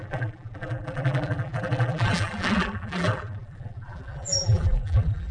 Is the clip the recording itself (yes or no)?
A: no